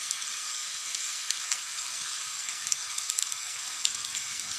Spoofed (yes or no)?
yes